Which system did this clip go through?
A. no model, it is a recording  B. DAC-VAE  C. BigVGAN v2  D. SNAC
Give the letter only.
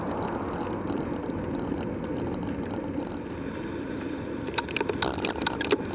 A